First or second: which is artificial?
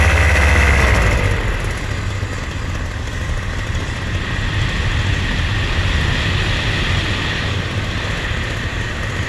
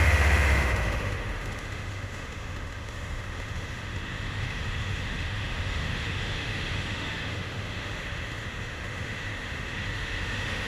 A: second